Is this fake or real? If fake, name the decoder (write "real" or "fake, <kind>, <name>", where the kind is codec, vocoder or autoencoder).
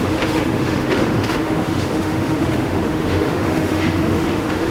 fake, autoencoder, DAC-VAE